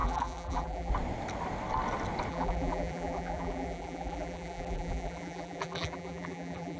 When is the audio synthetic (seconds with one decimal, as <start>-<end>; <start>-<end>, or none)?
0.0-0.9; 2.3-6.8